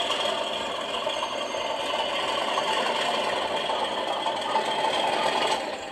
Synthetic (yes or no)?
no